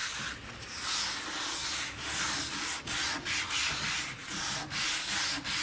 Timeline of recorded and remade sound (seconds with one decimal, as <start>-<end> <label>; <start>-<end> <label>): 0.0-5.6 recorded